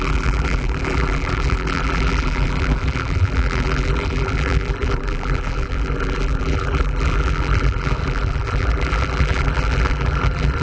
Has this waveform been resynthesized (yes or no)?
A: yes